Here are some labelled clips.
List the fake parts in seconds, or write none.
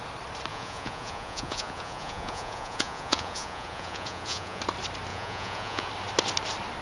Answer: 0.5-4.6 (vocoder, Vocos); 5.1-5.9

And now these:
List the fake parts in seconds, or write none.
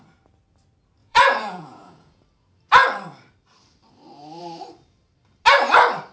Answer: 1.0-2.2 (vocoder, Vocos)